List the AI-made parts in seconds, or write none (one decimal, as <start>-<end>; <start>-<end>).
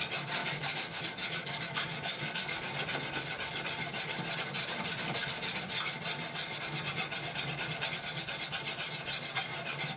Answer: 0.4-1.0; 1.4-2.7